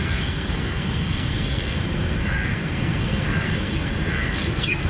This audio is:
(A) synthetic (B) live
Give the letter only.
A